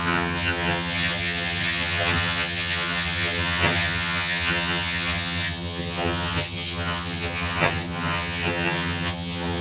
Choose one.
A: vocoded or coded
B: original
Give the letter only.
A